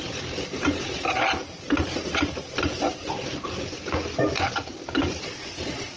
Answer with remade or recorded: recorded